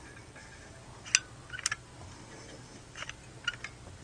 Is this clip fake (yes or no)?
no